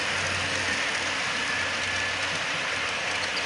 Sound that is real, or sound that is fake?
real